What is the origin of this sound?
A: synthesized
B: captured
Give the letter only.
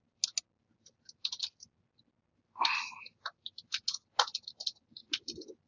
B